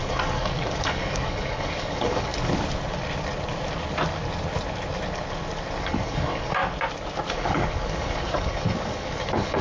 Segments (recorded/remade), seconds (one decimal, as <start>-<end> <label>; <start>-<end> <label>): 0.0-2.3 remade; 2.3-5.8 recorded; 5.8-6.6 remade; 6.6-7.3 recorded; 7.3-9.6 remade